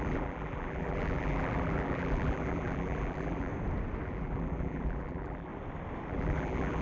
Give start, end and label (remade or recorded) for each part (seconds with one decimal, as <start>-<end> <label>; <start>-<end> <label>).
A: 0.0-3.5 remade; 3.5-4.0 recorded; 4.0-5.5 remade; 5.5-6.1 recorded; 6.1-6.8 remade